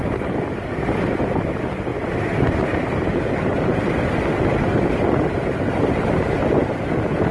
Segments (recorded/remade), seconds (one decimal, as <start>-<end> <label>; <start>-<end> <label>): 0.0-7.3 recorded